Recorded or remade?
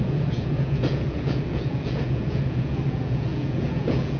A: remade